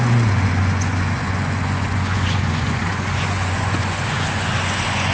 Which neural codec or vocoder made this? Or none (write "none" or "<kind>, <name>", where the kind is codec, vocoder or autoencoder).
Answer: vocoder, Vocos